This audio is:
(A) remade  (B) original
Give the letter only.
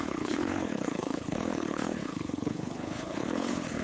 A